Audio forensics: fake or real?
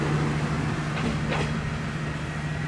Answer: real